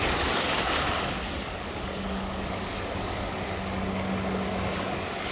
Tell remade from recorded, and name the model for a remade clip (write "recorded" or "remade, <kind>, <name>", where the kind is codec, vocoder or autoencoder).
remade, codec, DAC